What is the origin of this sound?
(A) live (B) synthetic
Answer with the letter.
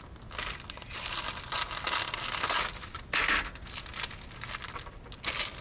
A